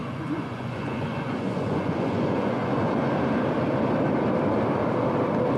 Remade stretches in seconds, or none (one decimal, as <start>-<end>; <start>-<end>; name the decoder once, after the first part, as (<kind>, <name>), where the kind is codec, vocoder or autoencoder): 0.0-3.1 (vocoder, Vocos)